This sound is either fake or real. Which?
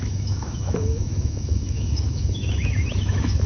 fake